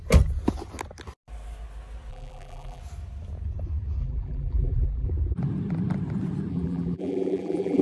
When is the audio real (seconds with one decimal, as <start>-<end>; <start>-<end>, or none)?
0.0-2.1; 2.8-4.0; 5.1-6.5